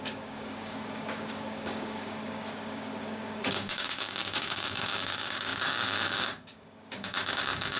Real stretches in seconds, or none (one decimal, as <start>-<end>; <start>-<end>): none